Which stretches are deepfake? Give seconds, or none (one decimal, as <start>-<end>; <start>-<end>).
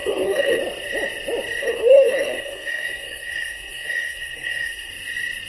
0.0-0.6; 1.6-4.9